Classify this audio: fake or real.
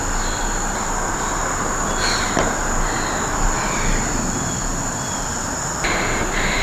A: real